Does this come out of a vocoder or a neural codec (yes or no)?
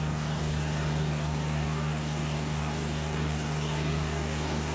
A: yes